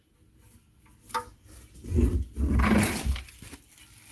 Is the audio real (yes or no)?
yes